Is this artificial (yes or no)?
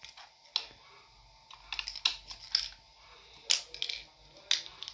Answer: no